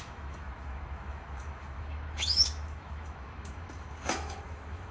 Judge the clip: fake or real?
fake